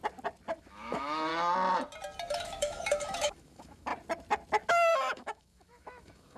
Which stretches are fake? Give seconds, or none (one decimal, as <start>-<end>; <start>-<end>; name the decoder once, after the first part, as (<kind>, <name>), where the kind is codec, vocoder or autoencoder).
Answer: 0.6-1.3 (autoencoder, DAC-VAE); 2.3-3.9; 4.7-6.4